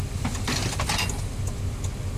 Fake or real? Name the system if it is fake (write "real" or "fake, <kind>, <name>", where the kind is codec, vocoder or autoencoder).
real